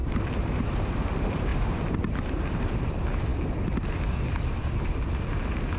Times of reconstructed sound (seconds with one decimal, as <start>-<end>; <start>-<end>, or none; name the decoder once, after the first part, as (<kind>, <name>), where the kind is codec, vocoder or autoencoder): 0.0-0.9 (vocoder, BigVGAN v2); 1.5-2.9